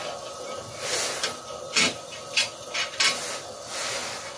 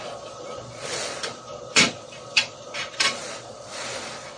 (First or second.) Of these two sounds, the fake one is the second